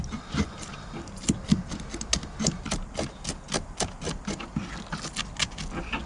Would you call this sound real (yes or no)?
yes